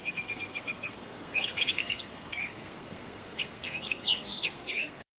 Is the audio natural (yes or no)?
no